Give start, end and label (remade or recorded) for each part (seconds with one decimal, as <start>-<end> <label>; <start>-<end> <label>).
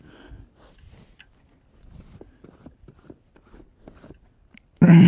0.0-5.1 recorded